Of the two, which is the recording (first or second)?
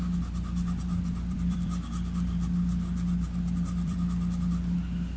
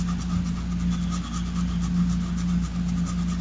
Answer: second